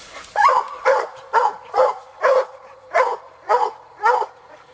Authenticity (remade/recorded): remade